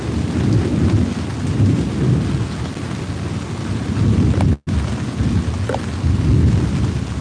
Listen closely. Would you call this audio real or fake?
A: real